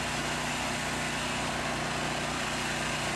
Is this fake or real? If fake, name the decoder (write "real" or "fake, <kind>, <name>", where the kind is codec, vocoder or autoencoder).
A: real